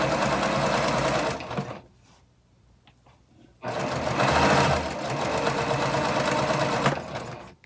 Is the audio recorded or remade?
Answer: recorded